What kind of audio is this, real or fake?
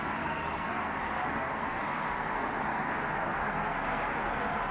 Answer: fake